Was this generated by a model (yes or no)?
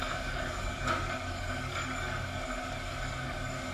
yes